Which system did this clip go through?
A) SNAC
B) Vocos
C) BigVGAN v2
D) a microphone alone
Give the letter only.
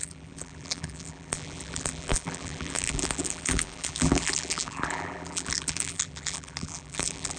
C